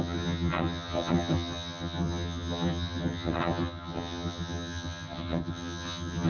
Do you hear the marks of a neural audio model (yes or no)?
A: yes